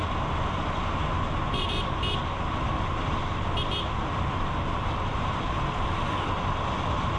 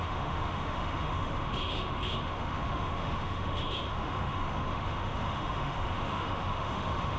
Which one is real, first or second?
first